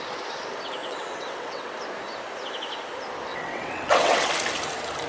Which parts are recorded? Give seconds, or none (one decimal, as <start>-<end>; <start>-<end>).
0.0-0.8; 1.7-3.3; 4.3-5.1